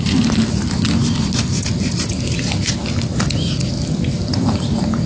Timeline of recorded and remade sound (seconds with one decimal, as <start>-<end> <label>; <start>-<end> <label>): 0.0-5.1 recorded